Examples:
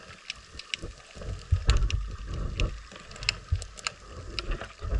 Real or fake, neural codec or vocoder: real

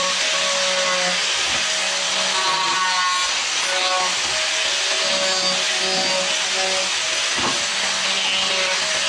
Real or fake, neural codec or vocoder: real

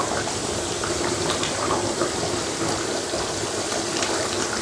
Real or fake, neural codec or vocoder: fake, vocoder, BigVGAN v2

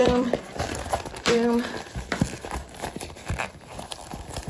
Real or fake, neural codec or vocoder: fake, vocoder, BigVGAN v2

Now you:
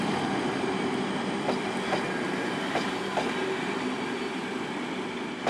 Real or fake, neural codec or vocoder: real